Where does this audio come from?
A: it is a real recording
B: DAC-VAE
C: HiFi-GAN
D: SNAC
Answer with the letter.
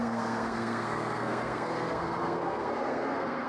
D